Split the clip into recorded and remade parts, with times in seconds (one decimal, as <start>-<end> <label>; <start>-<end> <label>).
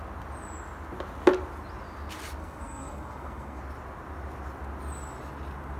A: 0.0-2.4 recorded; 2.4-3.6 remade; 3.6-5.8 recorded